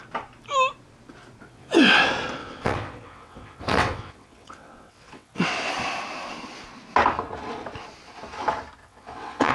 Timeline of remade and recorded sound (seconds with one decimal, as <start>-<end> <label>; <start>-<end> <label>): 0.0-1.4 recorded; 1.4-2.0 remade; 2.0-2.4 recorded; 2.4-5.7 remade; 5.7-8.8 recorded; 8.8-9.5 remade

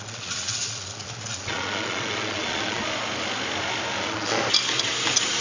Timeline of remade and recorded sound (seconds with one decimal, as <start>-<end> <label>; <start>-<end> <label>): 0.0-2.8 remade; 2.8-4.0 recorded; 4.0-4.4 remade; 4.4-5.4 recorded

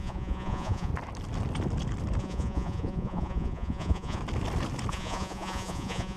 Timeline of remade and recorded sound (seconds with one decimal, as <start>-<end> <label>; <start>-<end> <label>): 0.0-0.9 remade; 0.9-2.2 recorded; 2.2-4.2 remade; 4.2-4.9 recorded; 4.9-6.2 remade

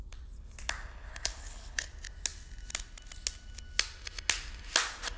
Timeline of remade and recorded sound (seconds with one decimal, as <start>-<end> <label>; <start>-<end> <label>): 0.0-1.1 recorded; 1.1-1.9 remade; 1.9-5.2 recorded

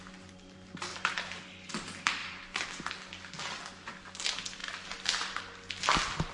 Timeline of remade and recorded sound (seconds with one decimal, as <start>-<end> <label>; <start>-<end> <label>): 0.0-0.9 recorded; 0.9-1.4 remade; 1.4-2.2 recorded; 2.2-2.9 remade; 2.9-4.6 recorded; 4.6-5.4 remade; 5.4-6.3 recorded

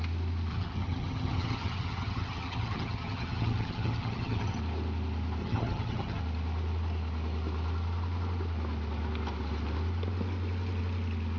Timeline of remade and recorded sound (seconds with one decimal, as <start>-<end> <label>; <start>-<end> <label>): 0.0-0.5 recorded; 0.5-4.6 remade; 4.6-5.4 recorded; 5.4-6.2 remade; 6.2-11.4 recorded

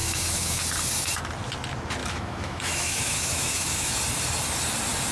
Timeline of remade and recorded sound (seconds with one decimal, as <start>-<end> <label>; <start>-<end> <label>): 0.0-0.6 remade; 0.6-2.0 recorded; 2.0-4.0 remade; 4.0-5.1 recorded

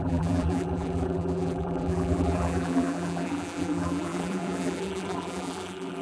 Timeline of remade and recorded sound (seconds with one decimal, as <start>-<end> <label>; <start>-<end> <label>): 0.0-6.0 remade